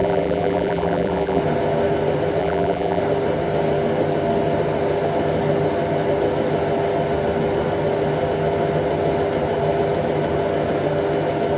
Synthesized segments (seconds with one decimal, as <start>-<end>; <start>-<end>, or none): 0.0-1.4; 2.4-3.0